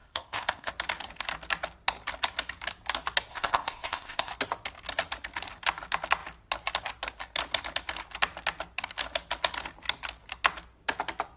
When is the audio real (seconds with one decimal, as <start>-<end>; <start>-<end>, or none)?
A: 0.7-3.3; 4.3-11.4